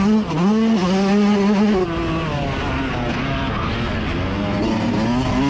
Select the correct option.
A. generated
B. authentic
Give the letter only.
B